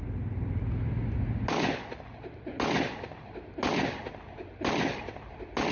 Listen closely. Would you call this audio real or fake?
real